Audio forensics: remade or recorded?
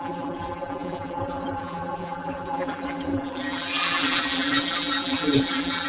remade